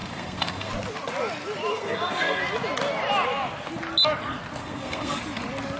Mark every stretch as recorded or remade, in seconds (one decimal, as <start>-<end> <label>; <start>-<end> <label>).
0.0-0.7 remade; 0.7-1.7 recorded; 1.7-2.4 remade; 2.4-4.6 recorded; 4.6-5.2 remade; 5.2-5.8 recorded